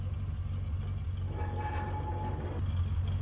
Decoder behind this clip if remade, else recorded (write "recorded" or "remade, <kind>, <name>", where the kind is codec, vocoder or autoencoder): recorded